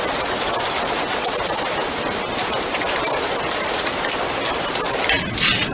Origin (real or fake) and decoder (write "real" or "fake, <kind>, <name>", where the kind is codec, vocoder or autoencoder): real